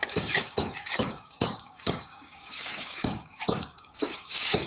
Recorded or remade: remade